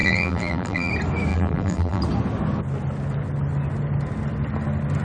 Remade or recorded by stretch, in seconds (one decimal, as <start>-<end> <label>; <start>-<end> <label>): 0.0-0.9 remade; 0.9-1.3 recorded; 1.3-2.0 remade; 2.0-5.0 recorded